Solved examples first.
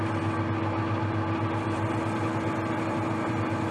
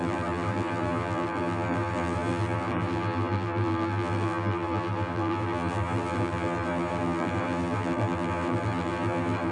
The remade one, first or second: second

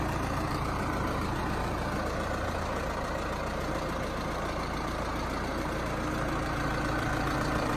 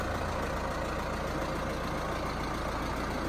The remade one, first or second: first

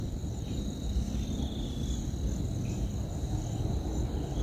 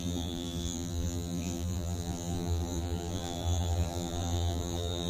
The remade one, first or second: second